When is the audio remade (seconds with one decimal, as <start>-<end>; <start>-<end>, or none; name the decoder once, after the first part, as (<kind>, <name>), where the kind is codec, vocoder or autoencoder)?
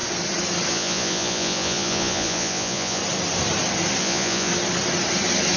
0.7-3.0 (vocoder, Vocos); 4.0-4.5